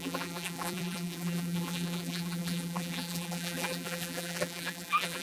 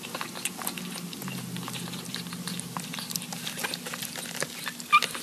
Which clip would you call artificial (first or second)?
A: first